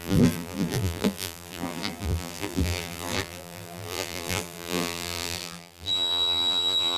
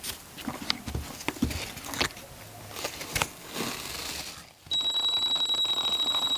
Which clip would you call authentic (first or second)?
second